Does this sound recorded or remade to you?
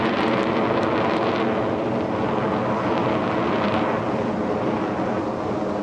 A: recorded